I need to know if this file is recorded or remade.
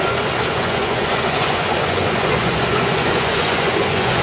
remade